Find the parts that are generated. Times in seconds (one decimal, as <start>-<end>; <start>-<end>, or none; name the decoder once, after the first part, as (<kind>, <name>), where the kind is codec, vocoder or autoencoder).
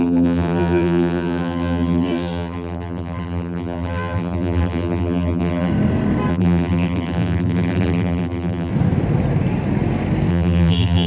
0.0-5.7 (vocoder, BigVGAN v2); 6.3-8.7; 10.3-11.1